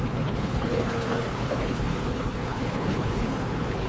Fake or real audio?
fake